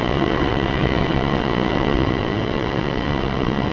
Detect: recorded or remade remade